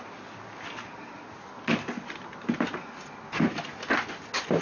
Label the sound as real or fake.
real